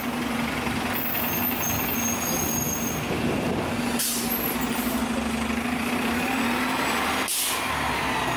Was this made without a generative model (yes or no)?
yes